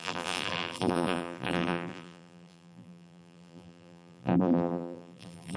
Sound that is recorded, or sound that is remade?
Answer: remade